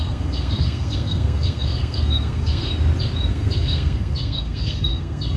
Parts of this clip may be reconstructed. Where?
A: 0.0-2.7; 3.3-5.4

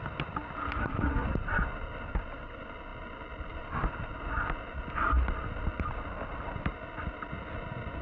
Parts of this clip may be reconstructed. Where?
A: none